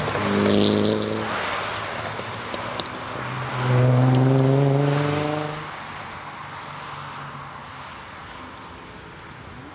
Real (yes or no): yes